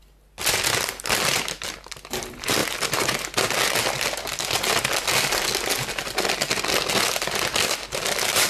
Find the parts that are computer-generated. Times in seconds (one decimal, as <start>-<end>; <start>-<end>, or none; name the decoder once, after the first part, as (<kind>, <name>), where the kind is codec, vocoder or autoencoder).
none